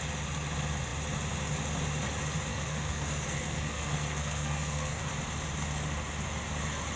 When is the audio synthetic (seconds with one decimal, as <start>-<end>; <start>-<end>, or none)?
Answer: 2.5-5.1